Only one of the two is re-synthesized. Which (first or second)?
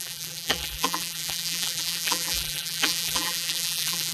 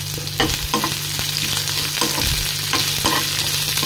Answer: first